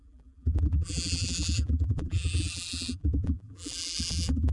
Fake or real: fake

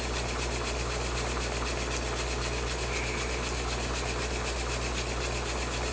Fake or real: real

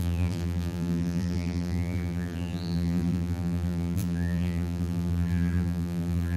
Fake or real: fake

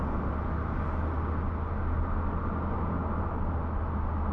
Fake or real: real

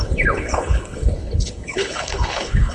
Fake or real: fake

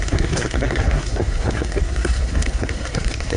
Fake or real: fake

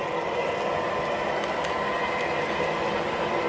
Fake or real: real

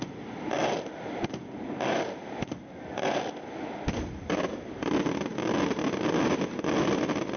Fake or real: real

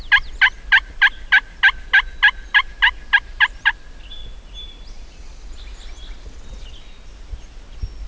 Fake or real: real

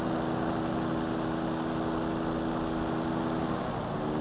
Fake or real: real